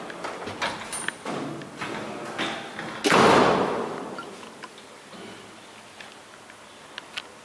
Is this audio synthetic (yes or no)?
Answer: no